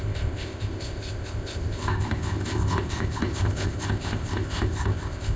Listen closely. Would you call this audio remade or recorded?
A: remade